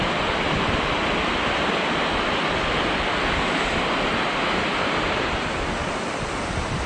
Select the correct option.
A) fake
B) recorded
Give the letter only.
B